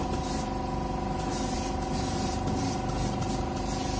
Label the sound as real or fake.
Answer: real